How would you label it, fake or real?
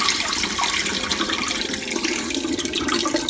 fake